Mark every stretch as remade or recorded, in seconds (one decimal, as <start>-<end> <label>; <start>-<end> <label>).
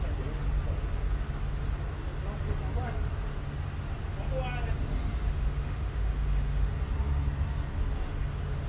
0.0-5.3 recorded; 5.3-6.7 remade; 6.7-8.7 recorded